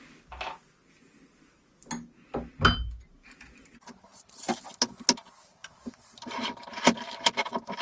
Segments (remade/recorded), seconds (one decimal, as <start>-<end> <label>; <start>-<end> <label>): 0.0-5.6 recorded; 5.6-6.5 remade; 6.5-7.8 recorded